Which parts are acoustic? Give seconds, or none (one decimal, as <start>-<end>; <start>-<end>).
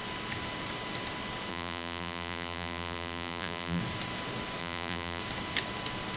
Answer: 0.0-1.5; 3.8-4.6; 5.2-6.2